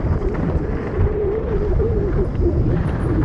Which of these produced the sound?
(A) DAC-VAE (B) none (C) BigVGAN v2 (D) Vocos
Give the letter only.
C